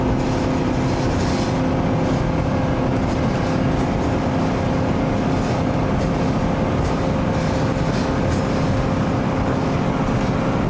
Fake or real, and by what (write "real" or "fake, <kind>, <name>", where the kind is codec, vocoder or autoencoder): real